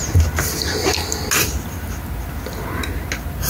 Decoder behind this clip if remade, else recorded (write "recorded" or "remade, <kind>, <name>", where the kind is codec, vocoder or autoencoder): recorded